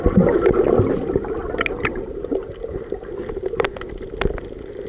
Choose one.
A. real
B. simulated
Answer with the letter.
A